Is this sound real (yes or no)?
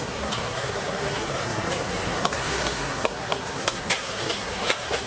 no